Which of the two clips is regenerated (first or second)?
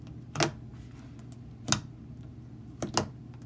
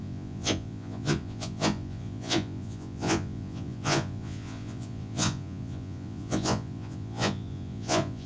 second